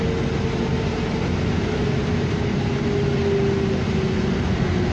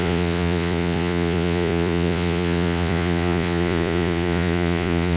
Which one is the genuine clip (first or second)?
first